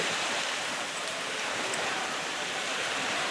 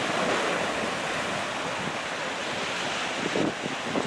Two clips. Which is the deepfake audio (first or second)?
first